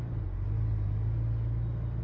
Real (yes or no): yes